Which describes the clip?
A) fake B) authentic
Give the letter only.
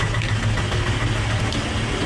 B